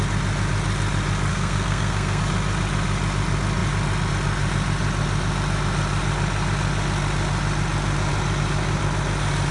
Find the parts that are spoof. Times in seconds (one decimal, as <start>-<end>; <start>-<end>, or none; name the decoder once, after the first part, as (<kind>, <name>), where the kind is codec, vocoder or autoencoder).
1.3-2.2 (codec, SNAC)